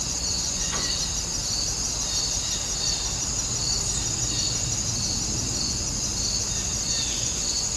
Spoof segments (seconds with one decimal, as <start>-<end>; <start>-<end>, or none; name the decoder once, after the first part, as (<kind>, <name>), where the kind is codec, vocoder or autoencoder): 0.0-0.9 (vocoder, Vocos); 5.6-6.1; 6.8-7.8